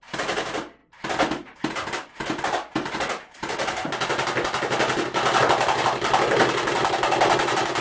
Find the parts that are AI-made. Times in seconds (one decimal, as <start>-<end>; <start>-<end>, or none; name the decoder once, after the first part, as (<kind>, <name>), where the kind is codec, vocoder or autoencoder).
none